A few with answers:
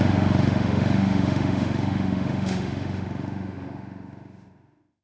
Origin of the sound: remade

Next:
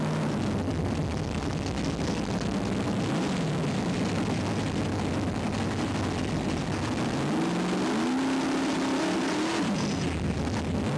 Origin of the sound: recorded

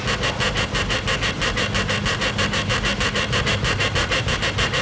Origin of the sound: recorded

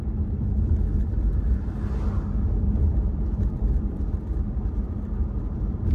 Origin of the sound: recorded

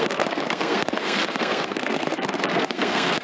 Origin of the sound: remade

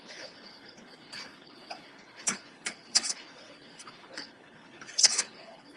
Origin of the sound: remade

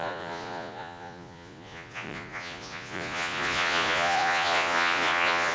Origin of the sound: remade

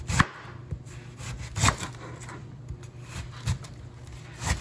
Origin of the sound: recorded